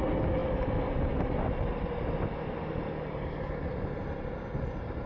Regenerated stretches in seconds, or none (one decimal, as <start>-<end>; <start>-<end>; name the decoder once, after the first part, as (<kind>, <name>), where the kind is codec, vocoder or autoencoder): none